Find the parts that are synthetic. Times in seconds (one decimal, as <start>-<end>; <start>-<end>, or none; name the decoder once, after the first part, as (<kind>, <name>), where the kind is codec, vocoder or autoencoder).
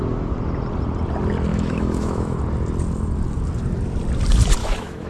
1.5-2.4 (autoencoder, DAC-VAE); 4.6-5.1